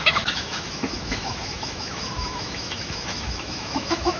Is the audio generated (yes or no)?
yes